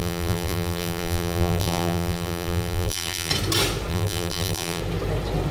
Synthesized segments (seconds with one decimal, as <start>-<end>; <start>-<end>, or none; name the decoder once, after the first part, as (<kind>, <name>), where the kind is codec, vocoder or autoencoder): 0.0-3.3 (vocoder, BigVGAN v2); 3.9-4.8